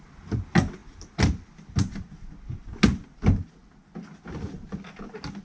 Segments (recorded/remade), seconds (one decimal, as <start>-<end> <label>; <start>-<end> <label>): 0.0-5.4 recorded